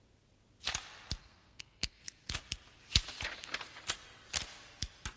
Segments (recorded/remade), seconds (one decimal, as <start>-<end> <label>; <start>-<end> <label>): 0.0-1.2 recorded; 1.2-2.0 remade; 2.0-5.2 recorded

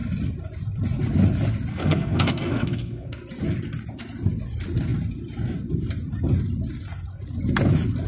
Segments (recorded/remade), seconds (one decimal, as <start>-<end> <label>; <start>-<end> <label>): 0.0-1.7 recorded; 1.7-3.1 remade; 3.1-8.1 recorded

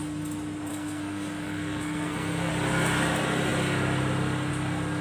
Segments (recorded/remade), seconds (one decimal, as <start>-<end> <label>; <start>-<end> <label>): 0.0-0.7 recorded; 0.7-2.5 remade; 2.5-5.0 recorded

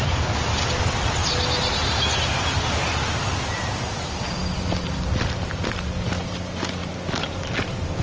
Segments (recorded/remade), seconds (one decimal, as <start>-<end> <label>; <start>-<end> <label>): 0.0-8.0 recorded

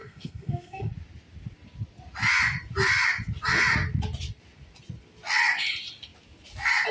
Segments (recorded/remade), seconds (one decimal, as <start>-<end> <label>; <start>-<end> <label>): 0.0-0.9 remade; 0.9-6.9 recorded

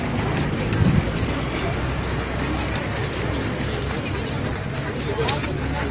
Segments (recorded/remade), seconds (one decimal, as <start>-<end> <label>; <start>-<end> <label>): 0.0-5.9 recorded

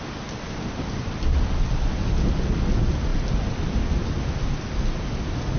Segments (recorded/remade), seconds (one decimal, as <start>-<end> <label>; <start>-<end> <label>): 0.0-5.6 recorded